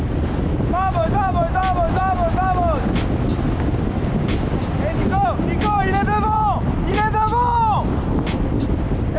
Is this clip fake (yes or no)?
no